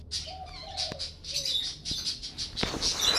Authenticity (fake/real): real